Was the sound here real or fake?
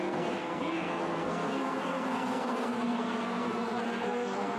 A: fake